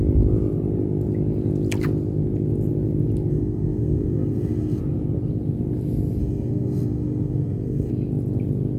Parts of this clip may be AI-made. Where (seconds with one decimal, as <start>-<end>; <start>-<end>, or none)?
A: 3.3-4.8; 6.2-7.9